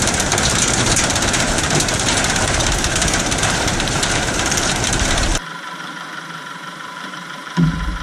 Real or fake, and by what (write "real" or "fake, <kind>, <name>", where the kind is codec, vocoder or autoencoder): fake, vocoder, BigVGAN v2